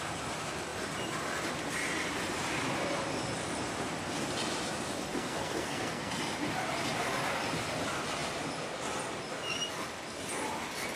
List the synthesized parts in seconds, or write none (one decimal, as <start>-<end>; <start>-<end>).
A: 5.1-6.2